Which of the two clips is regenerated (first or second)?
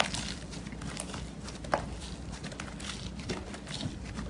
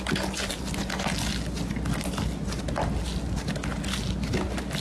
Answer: first